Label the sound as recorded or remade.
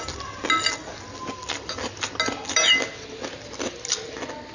recorded